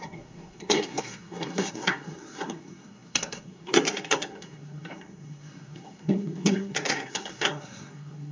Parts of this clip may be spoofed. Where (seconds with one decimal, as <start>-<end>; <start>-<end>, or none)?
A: 0.0-8.3